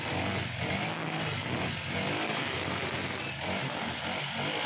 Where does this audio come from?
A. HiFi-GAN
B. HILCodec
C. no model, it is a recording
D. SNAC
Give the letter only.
C